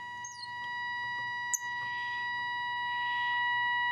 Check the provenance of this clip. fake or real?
real